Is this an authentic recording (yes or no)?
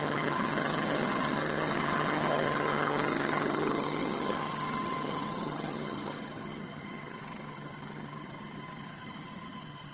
no